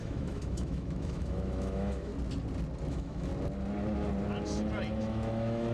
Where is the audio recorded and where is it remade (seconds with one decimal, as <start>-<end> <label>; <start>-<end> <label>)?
0.0-2.1 remade; 2.1-2.9 recorded; 2.9-3.3 remade; 3.3-5.0 recorded; 5.0-5.7 remade